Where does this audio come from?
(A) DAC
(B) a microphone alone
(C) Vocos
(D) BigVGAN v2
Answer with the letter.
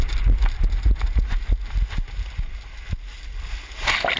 B